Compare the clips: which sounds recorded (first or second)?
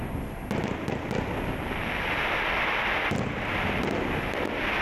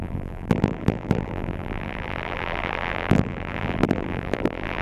first